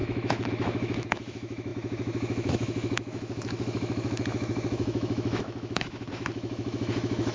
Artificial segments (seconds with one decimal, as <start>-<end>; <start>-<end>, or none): 0.0-7.3